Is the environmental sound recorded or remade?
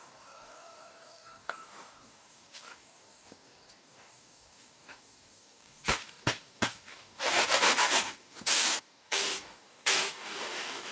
remade